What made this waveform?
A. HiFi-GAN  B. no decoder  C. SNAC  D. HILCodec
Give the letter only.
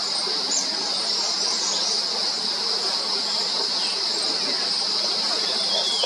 B